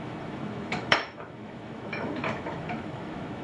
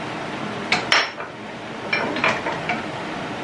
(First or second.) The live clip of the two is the second